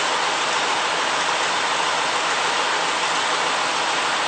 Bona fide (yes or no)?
yes